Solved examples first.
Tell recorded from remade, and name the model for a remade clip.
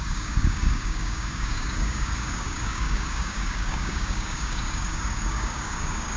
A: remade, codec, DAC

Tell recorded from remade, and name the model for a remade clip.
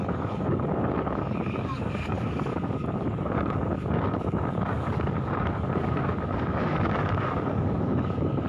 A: remade, codec, DAC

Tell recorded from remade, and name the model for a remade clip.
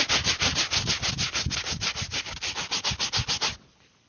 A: recorded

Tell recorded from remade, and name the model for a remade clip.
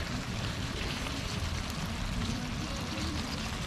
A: recorded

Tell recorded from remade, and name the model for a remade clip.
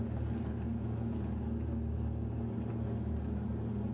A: recorded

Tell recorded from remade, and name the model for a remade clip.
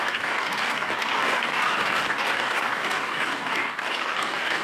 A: remade, codec, DAC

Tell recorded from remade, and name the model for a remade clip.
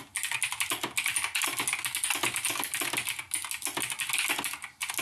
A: recorded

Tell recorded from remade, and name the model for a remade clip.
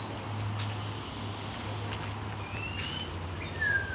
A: recorded